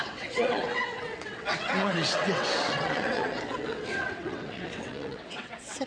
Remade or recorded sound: remade